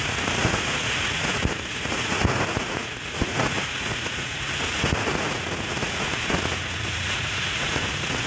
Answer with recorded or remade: remade